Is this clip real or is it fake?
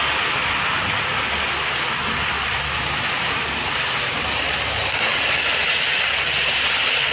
real